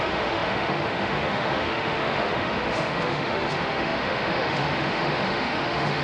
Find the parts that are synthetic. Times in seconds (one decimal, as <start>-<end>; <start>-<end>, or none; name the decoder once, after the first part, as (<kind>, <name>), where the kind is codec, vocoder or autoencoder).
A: 0.0-6.0 (autoencoder, DAC-VAE)